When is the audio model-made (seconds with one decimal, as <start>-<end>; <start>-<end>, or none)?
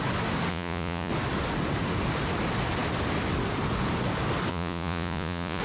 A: 0.5-1.1; 4.5-5.6